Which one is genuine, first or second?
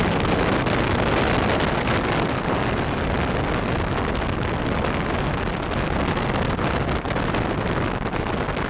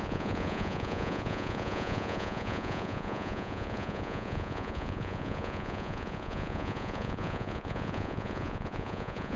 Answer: first